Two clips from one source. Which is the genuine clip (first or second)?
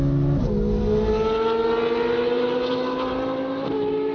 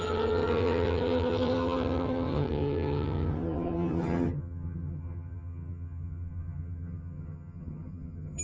first